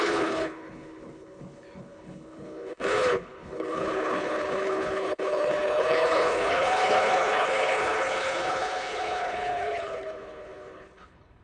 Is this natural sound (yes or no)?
no